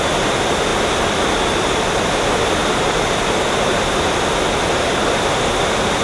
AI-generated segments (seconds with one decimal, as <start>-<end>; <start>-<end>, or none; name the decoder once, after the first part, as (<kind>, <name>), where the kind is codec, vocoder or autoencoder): none